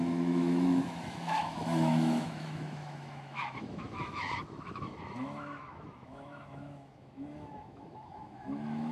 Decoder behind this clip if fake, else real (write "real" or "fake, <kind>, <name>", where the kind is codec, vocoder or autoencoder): fake, autoencoder, DAC-VAE